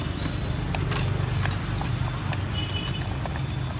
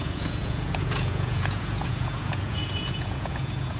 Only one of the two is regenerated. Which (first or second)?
second